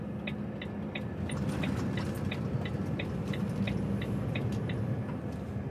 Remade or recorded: recorded